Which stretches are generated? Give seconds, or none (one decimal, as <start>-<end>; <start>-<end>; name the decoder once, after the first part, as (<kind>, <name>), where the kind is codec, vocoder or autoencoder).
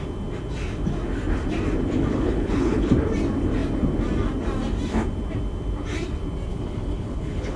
2.1-2.9 (codec, HILCodec); 6.5-7.6